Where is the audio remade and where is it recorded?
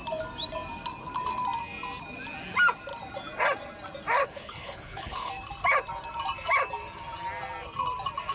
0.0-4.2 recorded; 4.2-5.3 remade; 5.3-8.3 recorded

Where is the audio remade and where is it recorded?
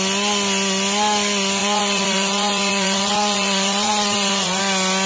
0.0-1.6 recorded; 1.6-4.6 remade; 4.6-5.1 recorded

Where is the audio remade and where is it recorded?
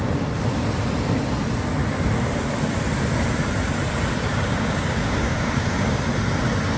0.0-4.3 recorded; 4.3-6.0 remade; 6.0-6.8 recorded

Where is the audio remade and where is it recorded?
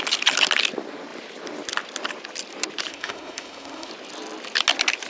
0.0-2.9 recorded; 2.9-3.9 remade; 3.9-5.1 recorded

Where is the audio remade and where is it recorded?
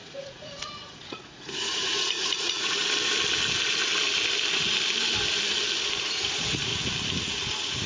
0.0-2.8 remade; 2.8-6.0 recorded; 6.0-6.7 remade; 6.7-7.3 recorded; 7.3-7.9 remade